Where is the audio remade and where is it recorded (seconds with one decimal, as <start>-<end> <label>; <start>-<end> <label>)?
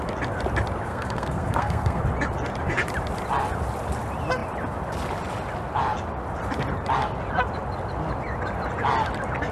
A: 0.0-0.9 recorded; 0.9-2.0 remade; 2.0-9.5 recorded